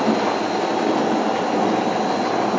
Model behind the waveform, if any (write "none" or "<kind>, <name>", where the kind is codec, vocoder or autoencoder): none